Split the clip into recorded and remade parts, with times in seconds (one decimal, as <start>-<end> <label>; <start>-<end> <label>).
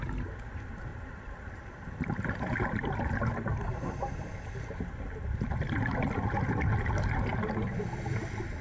0.0-0.9 recorded; 0.9-5.2 remade; 5.2-8.6 recorded